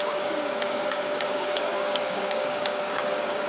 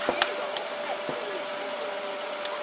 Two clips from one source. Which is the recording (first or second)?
second